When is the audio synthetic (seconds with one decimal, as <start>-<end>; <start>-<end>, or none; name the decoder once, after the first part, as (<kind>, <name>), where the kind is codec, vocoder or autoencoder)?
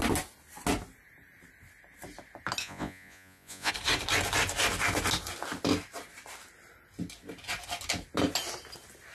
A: 2.6-3.7 (vocoder, Vocos)